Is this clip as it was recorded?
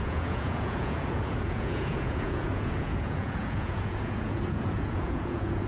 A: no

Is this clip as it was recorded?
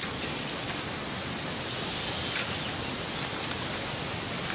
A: yes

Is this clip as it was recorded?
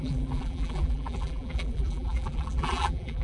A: no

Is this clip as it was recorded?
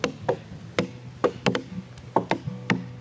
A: yes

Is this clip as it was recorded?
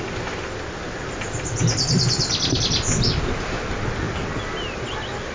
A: yes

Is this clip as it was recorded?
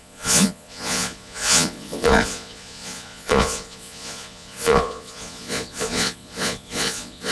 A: no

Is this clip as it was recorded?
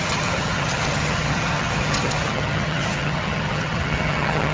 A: no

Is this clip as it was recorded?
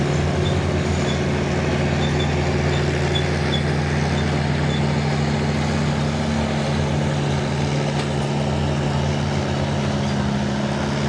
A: yes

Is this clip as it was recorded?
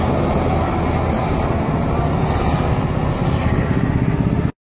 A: yes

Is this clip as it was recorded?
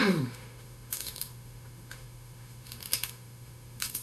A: no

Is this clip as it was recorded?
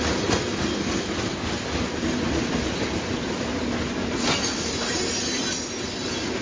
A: yes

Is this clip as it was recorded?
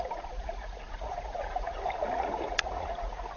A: no